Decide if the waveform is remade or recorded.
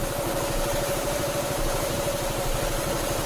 recorded